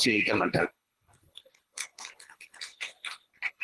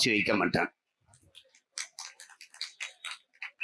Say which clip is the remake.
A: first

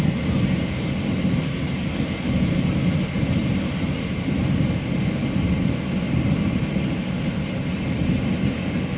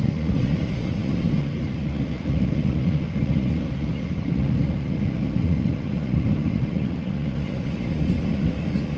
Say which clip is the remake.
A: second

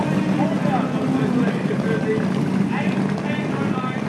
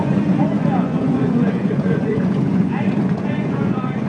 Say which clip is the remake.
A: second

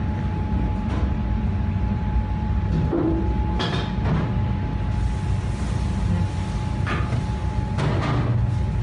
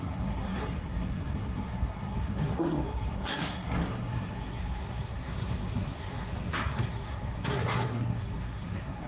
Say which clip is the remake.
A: second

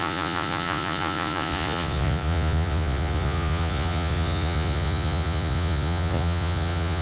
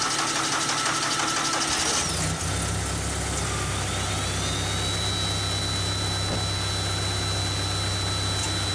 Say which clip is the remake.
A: first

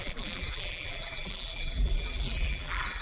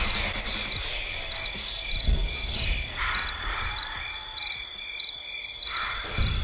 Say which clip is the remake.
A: first